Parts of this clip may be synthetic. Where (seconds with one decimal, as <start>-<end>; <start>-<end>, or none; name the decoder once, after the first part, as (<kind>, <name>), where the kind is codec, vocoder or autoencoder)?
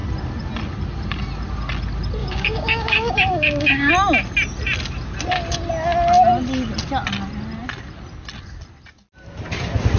2.2-3.9 (codec, DAC)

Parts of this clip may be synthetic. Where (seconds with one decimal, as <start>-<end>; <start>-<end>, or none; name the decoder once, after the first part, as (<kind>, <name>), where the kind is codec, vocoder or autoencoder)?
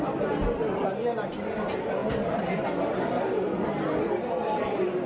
none